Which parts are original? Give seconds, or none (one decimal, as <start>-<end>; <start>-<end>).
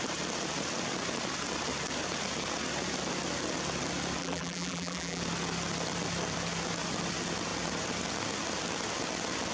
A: 0.0-4.2; 5.2-9.5